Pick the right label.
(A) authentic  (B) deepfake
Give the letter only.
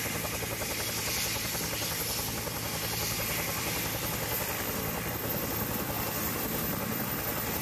A